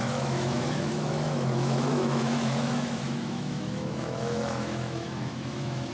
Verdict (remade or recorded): remade